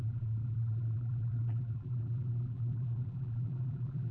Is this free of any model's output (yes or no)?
no